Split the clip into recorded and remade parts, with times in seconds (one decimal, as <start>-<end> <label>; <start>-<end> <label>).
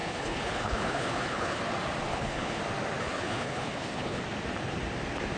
0.0-1.6 remade; 1.6-2.1 recorded; 2.1-2.6 remade; 2.6-3.0 recorded; 3.0-4.2 remade; 4.2-5.4 recorded